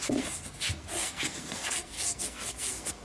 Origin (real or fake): fake